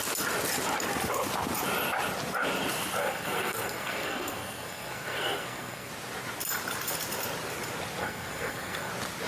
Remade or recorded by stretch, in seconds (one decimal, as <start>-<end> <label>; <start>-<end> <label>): 0.0-3.0 recorded; 3.0-5.9 remade; 5.9-8.0 recorded; 8.0-8.9 remade; 8.9-9.3 recorded